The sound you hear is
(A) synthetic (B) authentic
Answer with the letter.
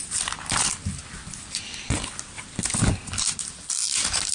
B